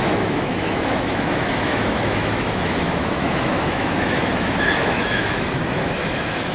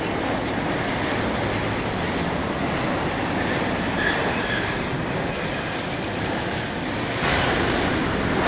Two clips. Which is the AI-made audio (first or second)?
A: first